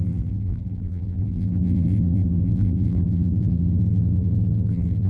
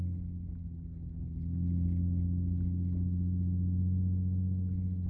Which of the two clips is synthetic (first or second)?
first